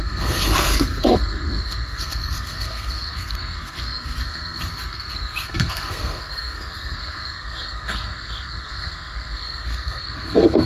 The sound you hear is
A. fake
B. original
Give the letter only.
A